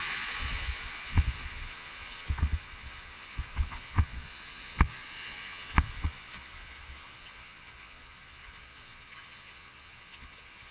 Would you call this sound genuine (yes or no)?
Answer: no